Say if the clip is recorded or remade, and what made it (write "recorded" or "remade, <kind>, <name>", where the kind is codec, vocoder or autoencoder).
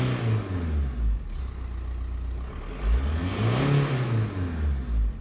recorded